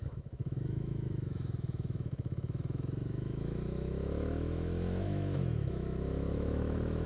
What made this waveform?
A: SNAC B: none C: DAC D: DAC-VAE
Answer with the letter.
D